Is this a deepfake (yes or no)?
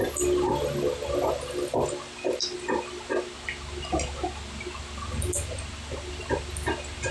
no